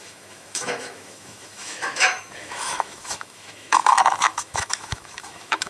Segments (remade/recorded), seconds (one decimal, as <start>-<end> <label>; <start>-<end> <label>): 0.0-5.7 remade